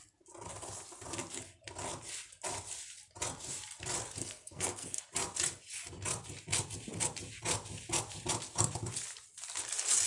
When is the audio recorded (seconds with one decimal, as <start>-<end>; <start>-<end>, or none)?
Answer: 0.0-4.2; 5.0-10.1